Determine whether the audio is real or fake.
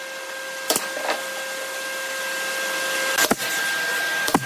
real